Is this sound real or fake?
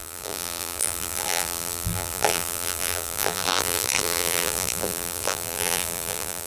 fake